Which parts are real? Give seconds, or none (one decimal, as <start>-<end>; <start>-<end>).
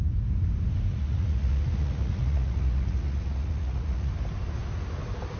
0.0-0.9; 4.1-5.4